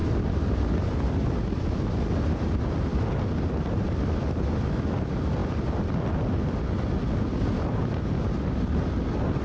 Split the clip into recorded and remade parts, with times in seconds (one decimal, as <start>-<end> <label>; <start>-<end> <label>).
0.0-9.4 recorded